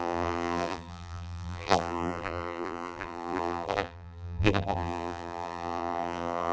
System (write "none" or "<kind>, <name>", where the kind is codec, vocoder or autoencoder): vocoder, BigVGAN v2